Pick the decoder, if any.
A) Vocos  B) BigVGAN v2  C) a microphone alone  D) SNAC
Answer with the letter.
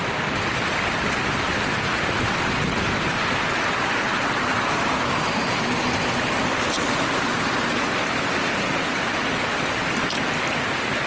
C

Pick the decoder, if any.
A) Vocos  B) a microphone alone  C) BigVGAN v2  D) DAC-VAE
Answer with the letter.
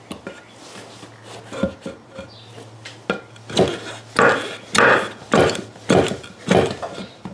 B